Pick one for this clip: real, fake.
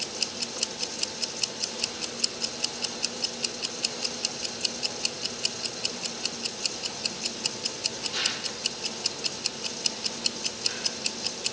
real